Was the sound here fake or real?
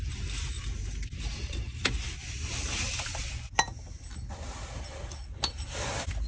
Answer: real